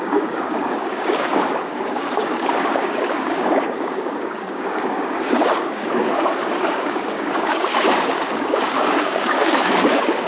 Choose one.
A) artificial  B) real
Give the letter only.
A